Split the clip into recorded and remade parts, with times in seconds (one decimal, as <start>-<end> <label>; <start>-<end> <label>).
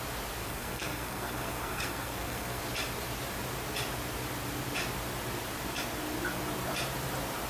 0.0-0.4 recorded; 0.4-2.6 remade; 2.6-7.5 recorded